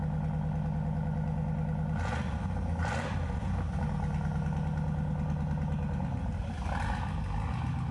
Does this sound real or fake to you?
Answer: real